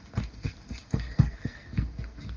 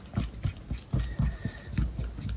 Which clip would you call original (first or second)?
second